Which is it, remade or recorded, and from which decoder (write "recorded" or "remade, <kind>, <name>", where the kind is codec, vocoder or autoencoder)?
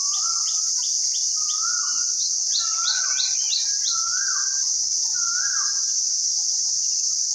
remade, vocoder, BigVGAN v2